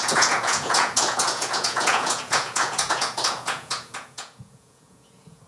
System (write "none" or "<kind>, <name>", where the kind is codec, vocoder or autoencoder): vocoder, Vocos